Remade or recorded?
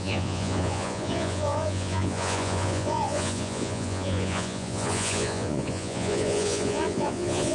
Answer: remade